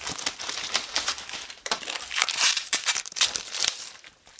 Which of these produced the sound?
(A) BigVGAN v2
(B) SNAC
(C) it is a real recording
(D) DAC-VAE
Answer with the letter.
A